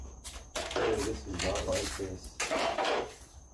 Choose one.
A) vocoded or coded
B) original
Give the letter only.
A